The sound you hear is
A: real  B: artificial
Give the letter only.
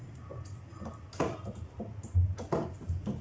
A